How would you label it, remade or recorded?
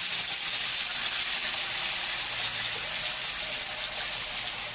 recorded